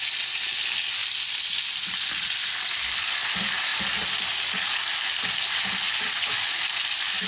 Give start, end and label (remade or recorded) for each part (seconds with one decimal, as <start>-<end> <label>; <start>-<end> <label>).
0.0-7.3 recorded